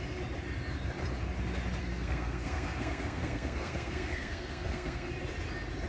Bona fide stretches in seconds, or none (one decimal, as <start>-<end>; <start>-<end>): 0.0-1.8; 5.1-5.9